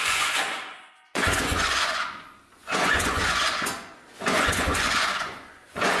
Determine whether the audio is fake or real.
fake